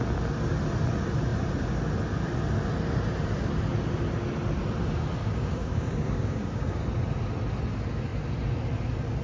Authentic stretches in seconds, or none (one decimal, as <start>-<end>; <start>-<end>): 0.0-5.2; 6.8-9.2